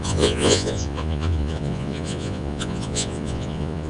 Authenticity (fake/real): fake